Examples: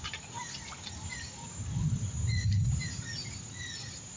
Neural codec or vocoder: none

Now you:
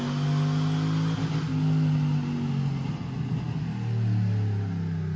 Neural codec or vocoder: none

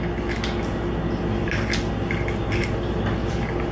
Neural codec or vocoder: none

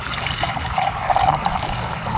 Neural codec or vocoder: codec, DAC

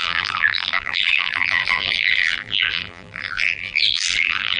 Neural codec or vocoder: vocoder, BigVGAN v2